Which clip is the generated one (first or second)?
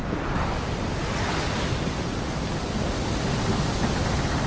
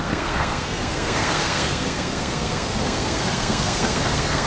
second